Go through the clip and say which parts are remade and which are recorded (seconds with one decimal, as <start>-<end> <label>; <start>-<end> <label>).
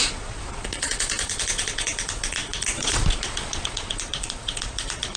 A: 0.0-5.2 remade